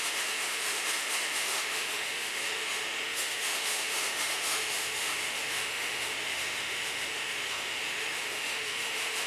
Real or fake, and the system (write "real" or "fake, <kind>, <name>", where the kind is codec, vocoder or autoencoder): fake, autoencoder, DAC-VAE